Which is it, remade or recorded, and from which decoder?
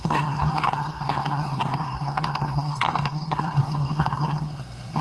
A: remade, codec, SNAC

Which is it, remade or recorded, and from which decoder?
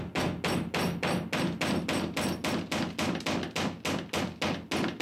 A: recorded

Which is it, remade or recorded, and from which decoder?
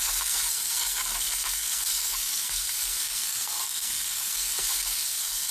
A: remade, codec, SNAC